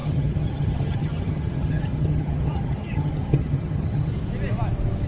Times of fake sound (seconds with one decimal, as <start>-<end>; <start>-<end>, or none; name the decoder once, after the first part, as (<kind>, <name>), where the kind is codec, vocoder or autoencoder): 0.0-4.1 (vocoder, HiFi-GAN)